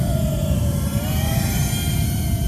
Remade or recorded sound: remade